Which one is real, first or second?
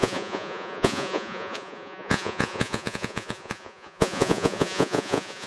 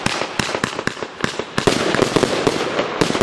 second